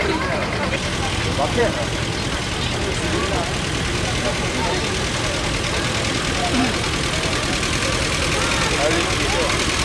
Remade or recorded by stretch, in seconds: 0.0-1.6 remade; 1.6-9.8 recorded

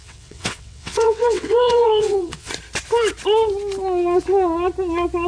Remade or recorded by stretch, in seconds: 0.0-2.5 remade; 2.5-5.3 recorded